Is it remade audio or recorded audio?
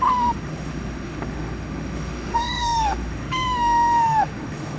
remade